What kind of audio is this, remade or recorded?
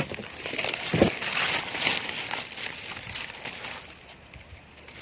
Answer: recorded